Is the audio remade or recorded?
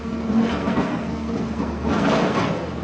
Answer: remade